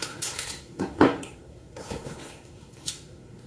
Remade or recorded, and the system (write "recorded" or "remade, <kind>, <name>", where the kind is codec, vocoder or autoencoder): remade, codec, SNAC